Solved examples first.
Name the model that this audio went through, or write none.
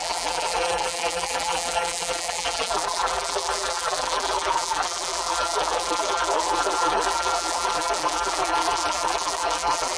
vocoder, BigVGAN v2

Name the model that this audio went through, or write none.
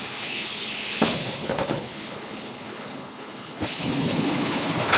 codec, HILCodec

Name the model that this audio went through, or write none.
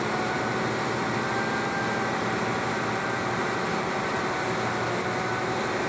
none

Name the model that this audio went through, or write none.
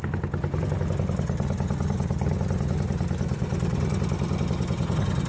none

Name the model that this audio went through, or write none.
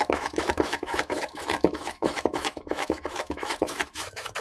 autoencoder, DAC-VAE